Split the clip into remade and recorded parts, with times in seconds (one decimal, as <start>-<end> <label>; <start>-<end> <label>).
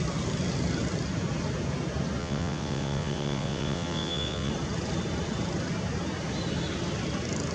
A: 0.0-2.2 recorded; 2.2-4.5 remade; 4.5-7.5 recorded